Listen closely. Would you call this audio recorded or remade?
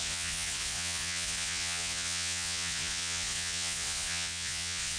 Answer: remade